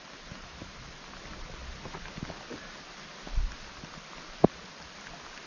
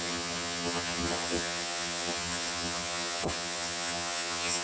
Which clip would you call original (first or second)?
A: first